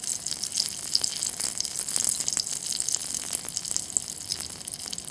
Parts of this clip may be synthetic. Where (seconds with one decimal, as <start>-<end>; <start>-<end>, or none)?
none

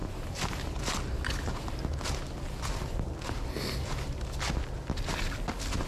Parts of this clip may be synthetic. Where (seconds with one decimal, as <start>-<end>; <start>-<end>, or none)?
0.0-0.8

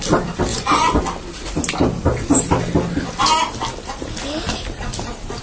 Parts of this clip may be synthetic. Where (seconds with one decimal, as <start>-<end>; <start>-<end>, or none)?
0.5-1.0

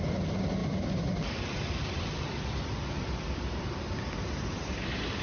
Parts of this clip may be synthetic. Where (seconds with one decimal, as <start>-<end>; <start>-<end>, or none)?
0.6-3.7

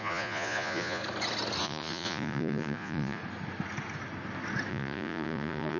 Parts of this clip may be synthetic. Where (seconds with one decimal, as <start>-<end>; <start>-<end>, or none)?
0.0-1.0; 1.6-3.2; 4.7-5.8

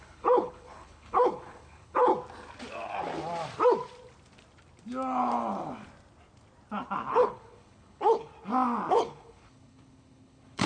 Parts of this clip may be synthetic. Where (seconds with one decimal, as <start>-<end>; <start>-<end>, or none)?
0.0-2.1; 7.1-8.3; 8.9-10.7

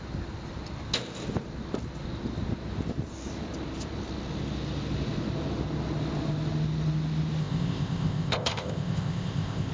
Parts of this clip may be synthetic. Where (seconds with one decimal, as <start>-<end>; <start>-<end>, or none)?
7.4-9.7